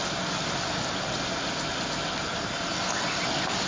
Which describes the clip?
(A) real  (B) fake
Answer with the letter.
A